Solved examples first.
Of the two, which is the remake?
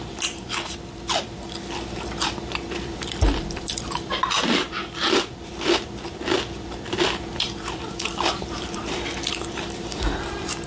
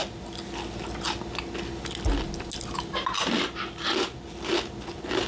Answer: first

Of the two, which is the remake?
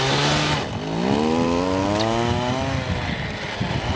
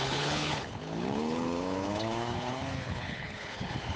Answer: second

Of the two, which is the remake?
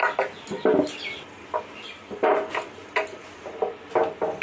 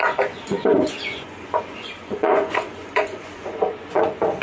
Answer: second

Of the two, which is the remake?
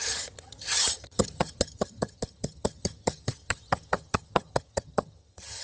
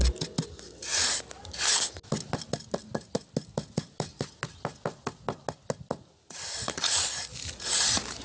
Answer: first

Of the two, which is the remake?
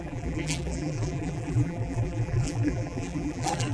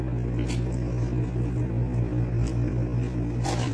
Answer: first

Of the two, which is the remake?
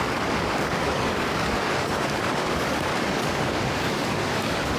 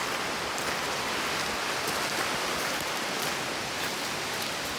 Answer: first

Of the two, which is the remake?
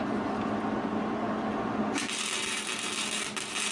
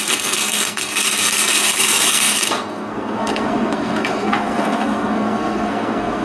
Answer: second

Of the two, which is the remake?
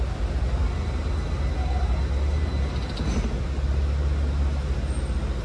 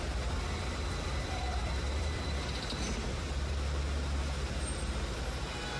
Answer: second